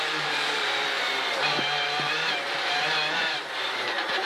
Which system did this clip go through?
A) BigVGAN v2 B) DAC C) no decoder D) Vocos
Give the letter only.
A